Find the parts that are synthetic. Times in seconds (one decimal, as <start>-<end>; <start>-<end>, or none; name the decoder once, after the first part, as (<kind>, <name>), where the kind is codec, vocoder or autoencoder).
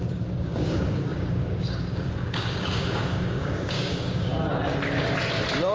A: 0.0-4.3 (codec, DAC)